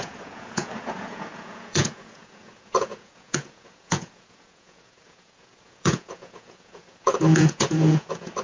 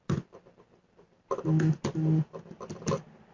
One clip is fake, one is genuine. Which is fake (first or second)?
first